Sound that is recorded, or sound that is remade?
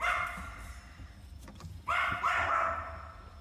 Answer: recorded